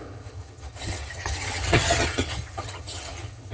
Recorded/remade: remade